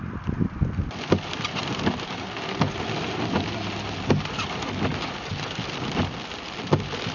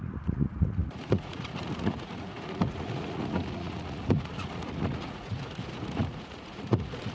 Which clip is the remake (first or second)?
second